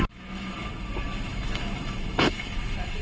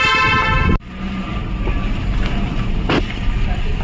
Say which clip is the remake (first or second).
first